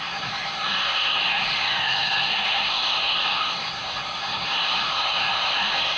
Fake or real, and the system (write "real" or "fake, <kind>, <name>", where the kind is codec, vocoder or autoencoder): fake, codec, SNAC